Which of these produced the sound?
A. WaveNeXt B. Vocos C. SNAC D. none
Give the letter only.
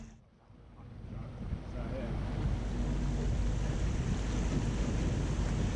D